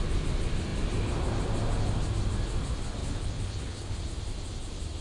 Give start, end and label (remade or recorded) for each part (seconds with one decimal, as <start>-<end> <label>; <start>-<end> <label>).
0.0-3.0 recorded; 3.0-4.0 remade; 4.0-5.0 recorded